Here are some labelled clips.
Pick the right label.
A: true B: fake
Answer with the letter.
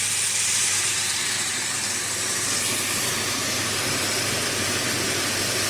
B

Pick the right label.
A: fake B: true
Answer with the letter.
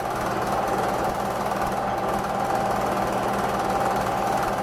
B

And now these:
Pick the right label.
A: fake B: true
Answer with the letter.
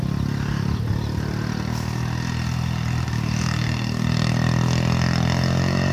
B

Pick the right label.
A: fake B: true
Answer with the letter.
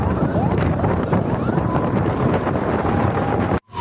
A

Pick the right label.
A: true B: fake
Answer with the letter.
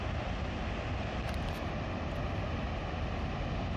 A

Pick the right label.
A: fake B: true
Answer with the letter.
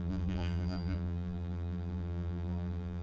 A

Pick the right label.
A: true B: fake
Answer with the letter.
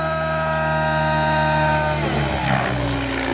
A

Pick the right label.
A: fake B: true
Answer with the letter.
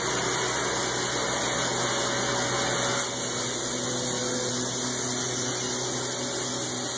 B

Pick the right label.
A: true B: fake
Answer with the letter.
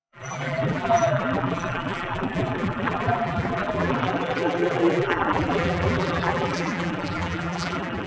B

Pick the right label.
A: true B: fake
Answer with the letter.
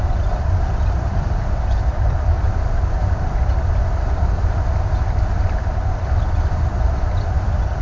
B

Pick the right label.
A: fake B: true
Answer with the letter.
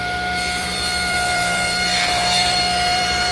A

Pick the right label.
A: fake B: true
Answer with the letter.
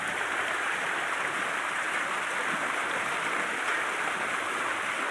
B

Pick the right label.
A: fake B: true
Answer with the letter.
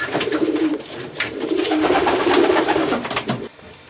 A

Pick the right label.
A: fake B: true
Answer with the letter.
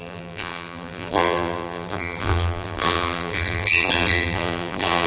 A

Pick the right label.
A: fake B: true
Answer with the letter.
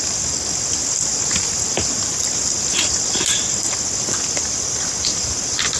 B